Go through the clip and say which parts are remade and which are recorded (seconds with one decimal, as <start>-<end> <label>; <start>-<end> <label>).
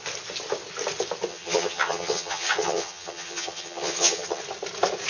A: 0.0-1.3 recorded; 1.3-4.4 remade; 4.4-5.1 recorded